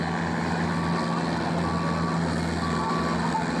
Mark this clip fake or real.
real